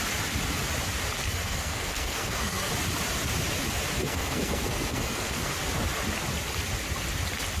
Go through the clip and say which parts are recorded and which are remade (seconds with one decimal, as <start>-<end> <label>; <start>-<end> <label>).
0.0-1.2 recorded; 1.2-2.7 remade; 2.7-3.9 recorded; 3.9-5.5 remade; 5.5-7.6 recorded